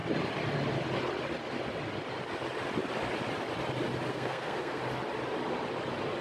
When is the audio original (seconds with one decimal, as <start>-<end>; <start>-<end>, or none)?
0.0-4.1; 4.8-6.2